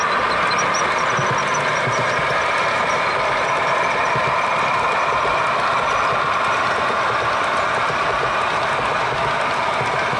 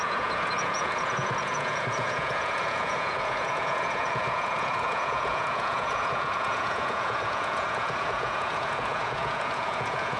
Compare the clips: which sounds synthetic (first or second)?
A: second